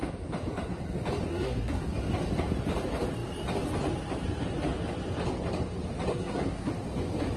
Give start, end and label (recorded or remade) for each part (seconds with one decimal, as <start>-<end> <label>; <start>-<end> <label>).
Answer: 0.0-1.3 recorded; 1.3-1.9 remade; 1.9-6.1 recorded; 6.1-6.7 remade; 6.7-7.4 recorded